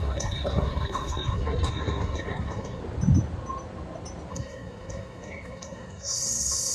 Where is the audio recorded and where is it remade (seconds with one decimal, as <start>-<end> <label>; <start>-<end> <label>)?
0.0-2.8 remade; 2.8-4.3 recorded; 4.3-6.7 remade